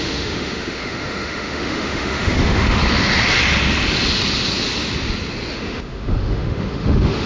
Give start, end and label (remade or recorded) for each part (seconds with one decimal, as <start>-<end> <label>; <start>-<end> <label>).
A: 0.0-2.8 remade; 2.8-5.5 recorded; 5.5-7.3 remade